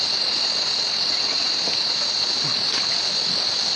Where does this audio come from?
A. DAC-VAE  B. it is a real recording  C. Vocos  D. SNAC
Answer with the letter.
B